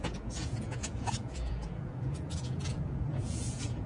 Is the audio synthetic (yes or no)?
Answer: yes